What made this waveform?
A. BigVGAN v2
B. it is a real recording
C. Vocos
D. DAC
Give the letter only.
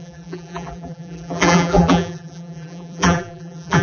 A